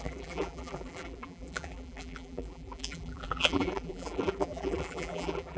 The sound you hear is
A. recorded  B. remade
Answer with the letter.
B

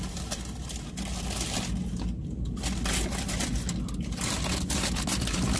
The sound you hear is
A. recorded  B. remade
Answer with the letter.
A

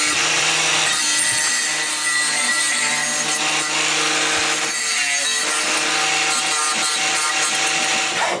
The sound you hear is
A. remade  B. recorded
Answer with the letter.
B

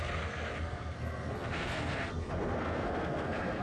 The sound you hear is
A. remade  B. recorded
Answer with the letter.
A